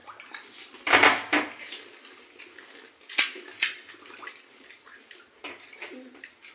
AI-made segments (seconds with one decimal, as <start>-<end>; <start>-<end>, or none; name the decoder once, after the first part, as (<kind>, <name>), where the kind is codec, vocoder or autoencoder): none